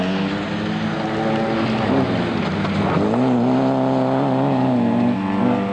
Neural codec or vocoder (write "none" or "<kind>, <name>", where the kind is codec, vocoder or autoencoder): none